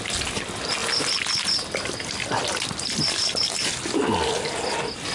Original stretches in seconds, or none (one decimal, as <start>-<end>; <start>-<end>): 0.0-5.1